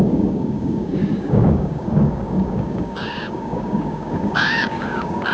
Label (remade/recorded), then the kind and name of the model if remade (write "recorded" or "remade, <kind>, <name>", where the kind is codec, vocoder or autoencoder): remade, codec, DAC